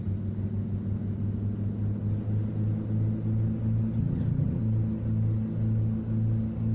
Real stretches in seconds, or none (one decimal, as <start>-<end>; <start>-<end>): 0.0-4.0; 4.6-6.7